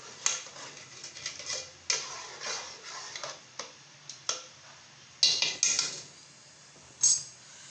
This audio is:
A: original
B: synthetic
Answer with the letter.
A